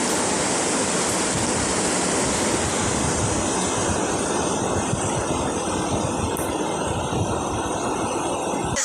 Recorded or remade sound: recorded